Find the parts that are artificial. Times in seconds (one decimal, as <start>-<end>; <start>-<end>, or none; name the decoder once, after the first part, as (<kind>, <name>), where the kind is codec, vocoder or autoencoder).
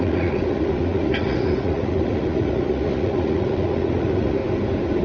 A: 0.0-4.4 (vocoder, Vocos)